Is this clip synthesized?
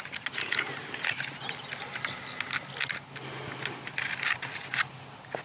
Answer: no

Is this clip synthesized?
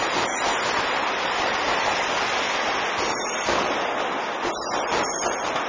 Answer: no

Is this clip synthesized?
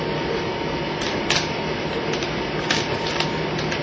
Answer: no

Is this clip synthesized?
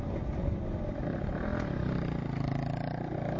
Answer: no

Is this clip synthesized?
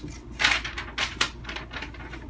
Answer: no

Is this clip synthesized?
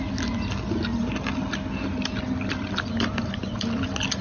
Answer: no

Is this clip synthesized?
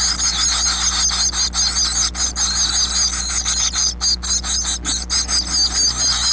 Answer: no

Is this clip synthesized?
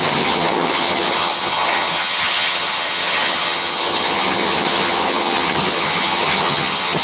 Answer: yes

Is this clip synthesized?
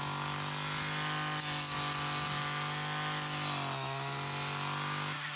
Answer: no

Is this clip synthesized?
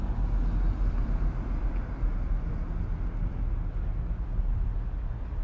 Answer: no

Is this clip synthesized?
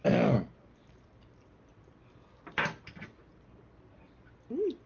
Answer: no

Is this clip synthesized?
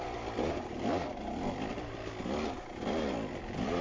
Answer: no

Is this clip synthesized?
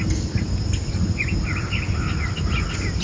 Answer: no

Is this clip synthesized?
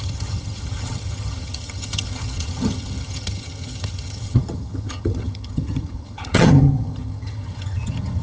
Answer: yes